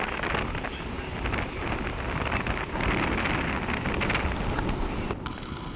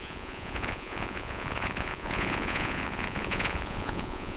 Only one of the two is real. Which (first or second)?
first